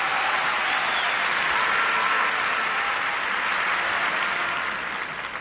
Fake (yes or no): no